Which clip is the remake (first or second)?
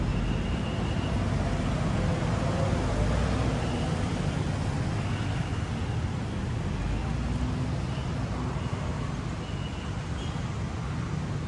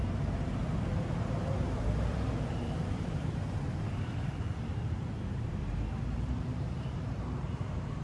second